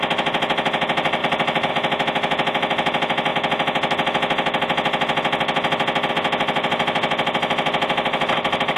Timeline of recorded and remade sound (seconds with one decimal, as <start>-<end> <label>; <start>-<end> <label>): 0.0-1.2 recorded; 1.2-1.7 remade; 1.7-8.8 recorded